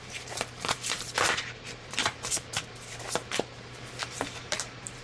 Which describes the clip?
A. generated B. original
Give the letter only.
A